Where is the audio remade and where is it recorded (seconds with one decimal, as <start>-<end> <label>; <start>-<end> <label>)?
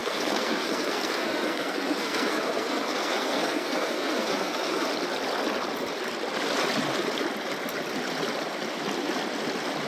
0.0-4.9 remade; 4.9-9.9 recorded